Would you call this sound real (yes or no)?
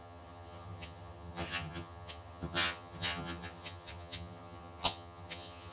no